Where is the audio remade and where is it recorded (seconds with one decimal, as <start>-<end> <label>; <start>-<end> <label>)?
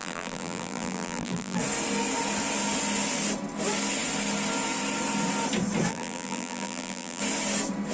0.0-1.6 remade; 1.6-5.9 recorded; 5.9-7.2 remade; 7.2-7.9 recorded